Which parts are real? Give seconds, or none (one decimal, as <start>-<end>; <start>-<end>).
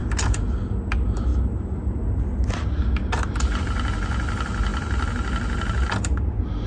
0.0-6.7